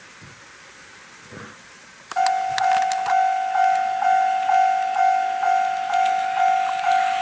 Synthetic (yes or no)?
no